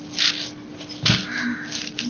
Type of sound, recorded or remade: recorded